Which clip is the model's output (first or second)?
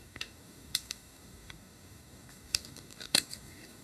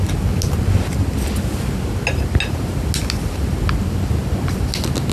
first